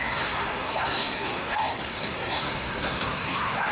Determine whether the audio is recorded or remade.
remade